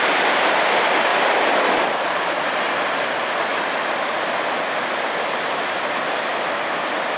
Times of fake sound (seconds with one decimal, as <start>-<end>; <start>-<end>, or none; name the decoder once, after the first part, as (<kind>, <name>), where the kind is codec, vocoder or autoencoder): none